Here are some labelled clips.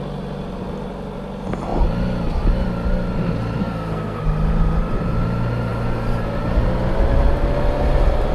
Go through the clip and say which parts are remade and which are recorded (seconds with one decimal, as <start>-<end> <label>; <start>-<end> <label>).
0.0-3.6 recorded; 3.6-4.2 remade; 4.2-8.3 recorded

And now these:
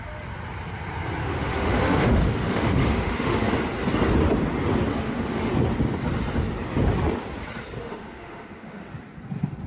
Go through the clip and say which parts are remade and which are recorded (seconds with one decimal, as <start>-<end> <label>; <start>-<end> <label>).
0.0-1.2 recorded; 1.2-3.5 remade; 3.5-4.9 recorded; 4.9-5.5 remade; 5.5-7.8 recorded; 7.8-8.9 remade; 8.9-9.7 recorded

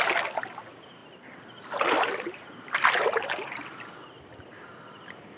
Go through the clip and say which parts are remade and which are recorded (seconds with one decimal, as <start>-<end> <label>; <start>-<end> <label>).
0.0-5.4 recorded

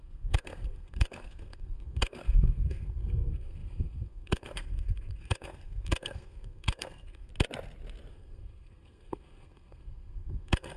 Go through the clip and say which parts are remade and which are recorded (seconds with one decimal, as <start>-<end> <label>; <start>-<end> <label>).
0.0-7.3 remade; 7.3-8.1 recorded; 8.1-10.8 remade

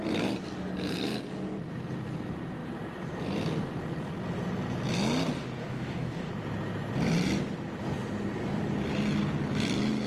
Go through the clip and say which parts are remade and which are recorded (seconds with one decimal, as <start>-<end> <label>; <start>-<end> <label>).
0.0-5.6 recorded; 5.6-6.3 remade; 6.3-10.1 recorded

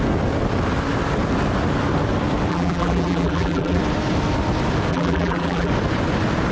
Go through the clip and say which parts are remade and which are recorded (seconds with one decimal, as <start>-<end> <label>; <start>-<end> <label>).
0.0-2.5 recorded; 2.5-3.8 remade; 3.8-4.9 recorded; 4.9-5.7 remade; 5.7-6.5 recorded

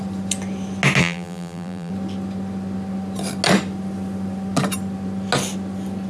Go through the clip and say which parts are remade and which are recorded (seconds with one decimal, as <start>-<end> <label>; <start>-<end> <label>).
0.0-1.0 recorded; 1.0-1.9 remade; 1.9-6.1 recorded

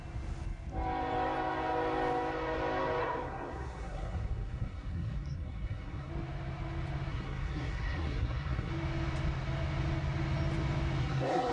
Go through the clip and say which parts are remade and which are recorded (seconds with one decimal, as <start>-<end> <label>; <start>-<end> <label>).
0.0-3.0 recorded; 3.0-6.1 remade; 6.1-7.1 recorded; 7.1-8.7 remade; 8.7-11.0 recorded; 11.0-11.5 remade